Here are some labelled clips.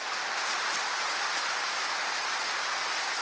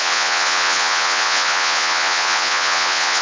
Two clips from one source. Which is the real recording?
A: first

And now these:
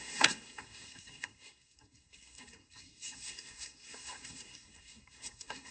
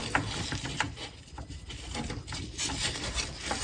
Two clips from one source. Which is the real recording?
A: second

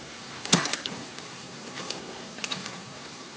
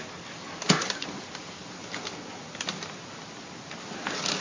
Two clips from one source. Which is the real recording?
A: second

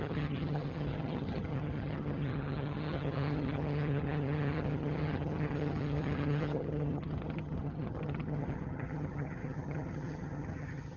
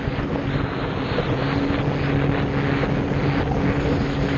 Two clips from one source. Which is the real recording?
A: second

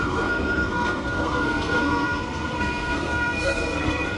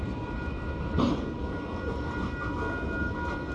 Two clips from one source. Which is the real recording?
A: second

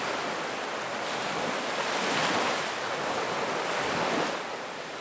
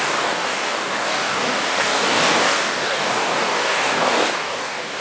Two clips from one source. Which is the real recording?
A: first